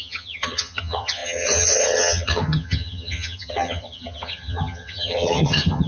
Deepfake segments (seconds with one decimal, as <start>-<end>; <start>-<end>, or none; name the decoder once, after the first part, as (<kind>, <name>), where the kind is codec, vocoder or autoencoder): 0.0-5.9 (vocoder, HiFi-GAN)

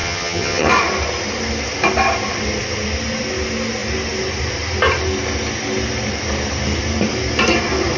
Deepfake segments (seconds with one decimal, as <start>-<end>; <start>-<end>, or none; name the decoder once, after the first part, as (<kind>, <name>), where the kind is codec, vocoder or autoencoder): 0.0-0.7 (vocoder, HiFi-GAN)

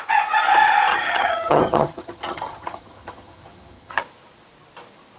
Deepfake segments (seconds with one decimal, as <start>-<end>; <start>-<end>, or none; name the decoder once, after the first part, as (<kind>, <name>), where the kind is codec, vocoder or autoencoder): 0.9-4.0 (vocoder, HiFi-GAN)

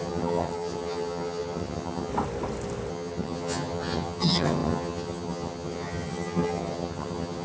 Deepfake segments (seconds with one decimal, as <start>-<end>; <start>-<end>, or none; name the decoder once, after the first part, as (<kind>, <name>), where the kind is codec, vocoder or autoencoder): 0.0-2.1 (vocoder, HiFi-GAN); 2.9-7.4

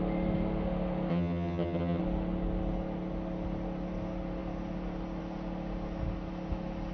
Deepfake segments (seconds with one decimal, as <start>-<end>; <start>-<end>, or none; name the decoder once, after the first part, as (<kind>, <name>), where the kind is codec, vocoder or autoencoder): 1.1-2.0 (vocoder, HiFi-GAN)

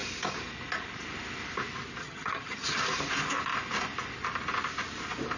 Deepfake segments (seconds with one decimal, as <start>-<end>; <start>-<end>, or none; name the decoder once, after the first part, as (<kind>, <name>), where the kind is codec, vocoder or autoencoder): 2.0-2.8 (vocoder, HiFi-GAN)